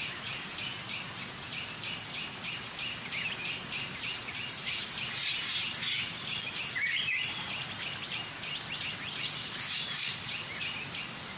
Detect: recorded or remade recorded